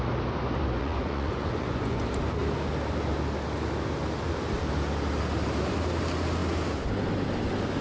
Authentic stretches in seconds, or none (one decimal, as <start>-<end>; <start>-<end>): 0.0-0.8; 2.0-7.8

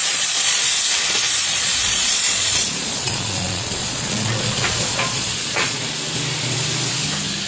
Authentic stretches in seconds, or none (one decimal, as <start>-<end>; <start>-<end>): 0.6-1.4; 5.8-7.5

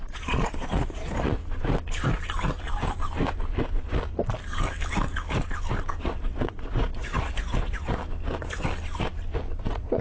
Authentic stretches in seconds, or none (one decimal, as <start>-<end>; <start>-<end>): 1.4-6.0; 8.0-9.6